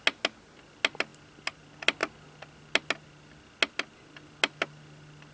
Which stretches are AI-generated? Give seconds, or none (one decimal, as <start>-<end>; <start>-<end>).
none